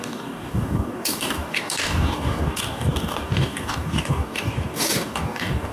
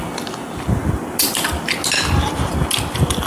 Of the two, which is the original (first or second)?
second